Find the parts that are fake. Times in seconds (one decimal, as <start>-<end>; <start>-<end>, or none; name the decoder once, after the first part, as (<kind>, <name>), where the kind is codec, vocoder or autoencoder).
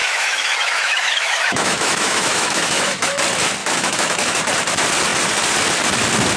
0.0-3.2 (autoencoder, DAC-VAE); 3.6-4.4